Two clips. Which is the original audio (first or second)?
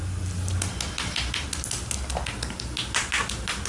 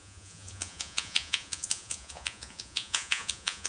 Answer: first